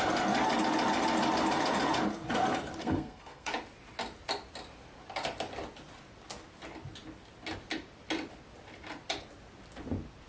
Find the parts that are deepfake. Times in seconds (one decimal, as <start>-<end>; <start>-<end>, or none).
2.8-3.5